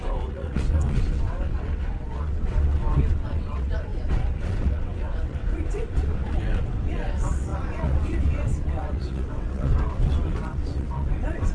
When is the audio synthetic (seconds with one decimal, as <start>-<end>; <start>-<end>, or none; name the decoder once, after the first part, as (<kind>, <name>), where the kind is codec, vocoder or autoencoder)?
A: 0.0-11.5 (vocoder, WaveNeXt)